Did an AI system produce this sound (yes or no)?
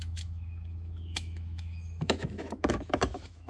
yes